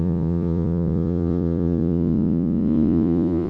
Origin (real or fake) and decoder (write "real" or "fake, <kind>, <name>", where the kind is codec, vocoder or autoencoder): fake, vocoder, Vocos